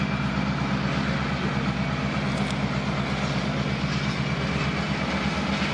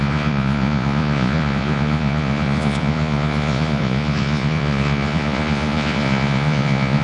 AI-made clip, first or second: second